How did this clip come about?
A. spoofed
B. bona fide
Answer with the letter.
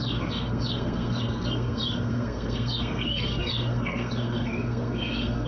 A